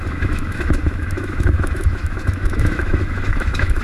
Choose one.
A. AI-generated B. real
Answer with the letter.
A